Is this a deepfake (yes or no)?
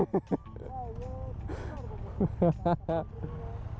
no